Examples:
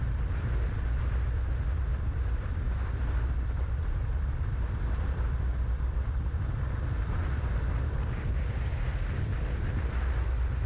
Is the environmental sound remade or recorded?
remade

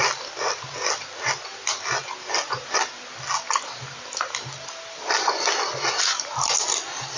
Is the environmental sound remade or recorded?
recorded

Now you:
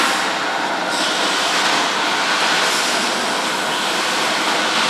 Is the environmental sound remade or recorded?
recorded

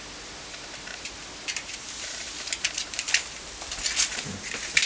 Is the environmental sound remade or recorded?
recorded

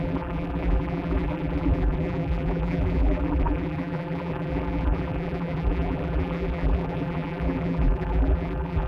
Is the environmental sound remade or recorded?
remade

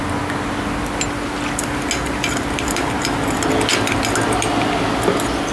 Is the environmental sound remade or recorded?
recorded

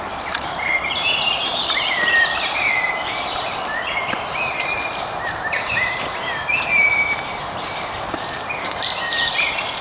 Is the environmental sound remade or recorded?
remade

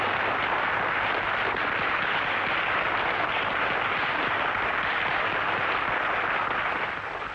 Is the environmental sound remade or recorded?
recorded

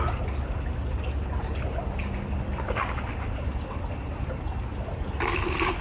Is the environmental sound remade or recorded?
recorded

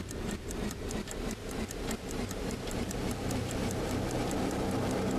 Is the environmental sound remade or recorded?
remade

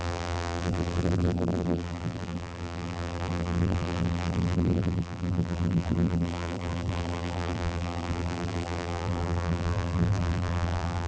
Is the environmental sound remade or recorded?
remade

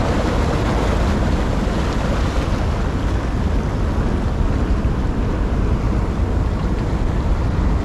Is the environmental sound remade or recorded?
recorded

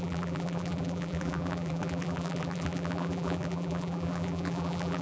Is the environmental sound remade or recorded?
remade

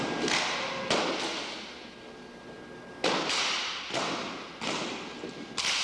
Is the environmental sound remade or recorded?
recorded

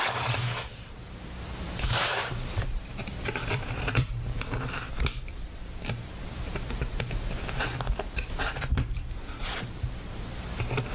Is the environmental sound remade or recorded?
remade